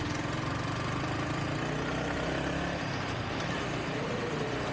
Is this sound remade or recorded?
recorded